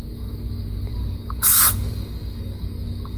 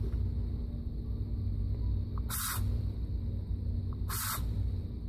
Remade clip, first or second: first